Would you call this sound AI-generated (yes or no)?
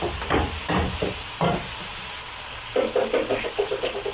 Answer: no